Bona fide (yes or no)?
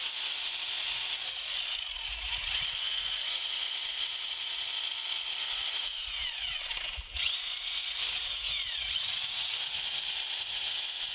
no